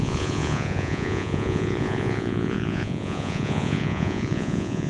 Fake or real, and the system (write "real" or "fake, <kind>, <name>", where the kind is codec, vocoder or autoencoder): fake, vocoder, Vocos